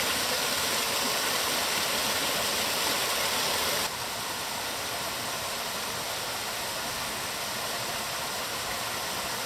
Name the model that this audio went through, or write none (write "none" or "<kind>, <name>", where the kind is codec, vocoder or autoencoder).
none